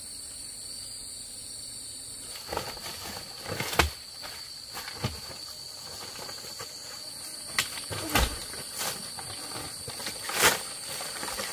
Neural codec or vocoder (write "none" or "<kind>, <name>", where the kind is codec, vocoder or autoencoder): none